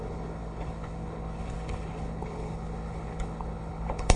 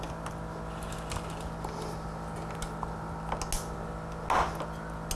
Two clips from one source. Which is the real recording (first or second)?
second